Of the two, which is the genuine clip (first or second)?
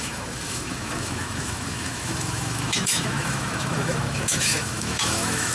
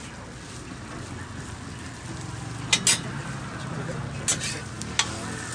second